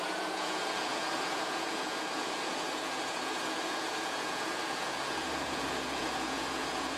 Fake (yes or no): yes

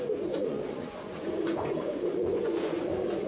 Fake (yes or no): yes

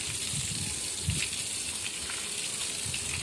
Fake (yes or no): no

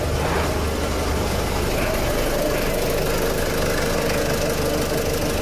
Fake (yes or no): no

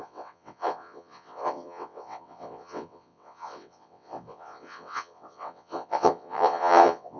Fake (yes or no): yes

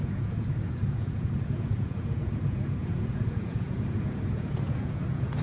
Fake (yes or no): yes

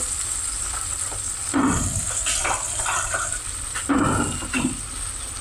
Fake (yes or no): yes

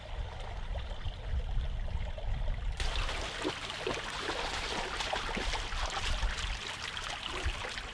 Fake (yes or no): no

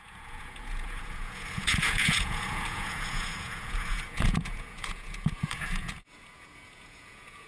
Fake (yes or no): yes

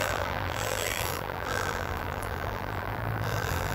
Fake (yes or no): yes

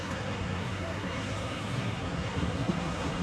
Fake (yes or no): yes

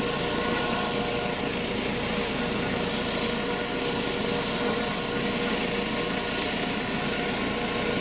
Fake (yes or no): no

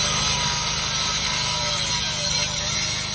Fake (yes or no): no